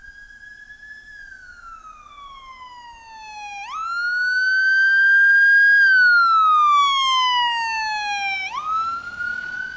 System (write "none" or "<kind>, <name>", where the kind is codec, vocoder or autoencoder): none